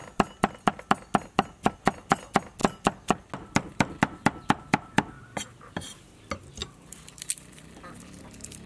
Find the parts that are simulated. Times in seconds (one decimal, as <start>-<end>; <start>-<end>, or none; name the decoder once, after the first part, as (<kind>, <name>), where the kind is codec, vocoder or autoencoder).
6.6-8.2 (vocoder, BigVGAN v2)